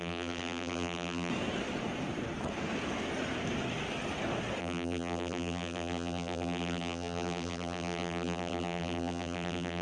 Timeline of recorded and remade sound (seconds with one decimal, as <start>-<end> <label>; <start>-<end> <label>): 0.0-1.3 remade; 1.3-4.6 recorded; 4.6-9.8 remade